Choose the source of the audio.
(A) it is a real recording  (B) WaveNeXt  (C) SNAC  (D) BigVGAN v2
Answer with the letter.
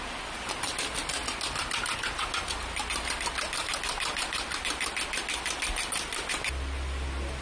A